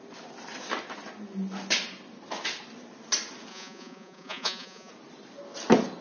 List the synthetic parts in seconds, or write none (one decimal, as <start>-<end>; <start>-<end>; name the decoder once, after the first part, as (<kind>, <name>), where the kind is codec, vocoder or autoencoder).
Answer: 3.5-4.9 (vocoder, Vocos)